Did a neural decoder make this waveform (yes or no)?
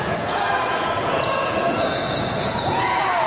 yes